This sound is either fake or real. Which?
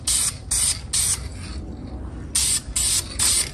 real